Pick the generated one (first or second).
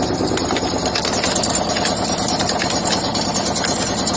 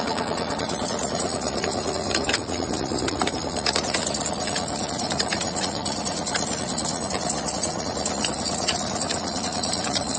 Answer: second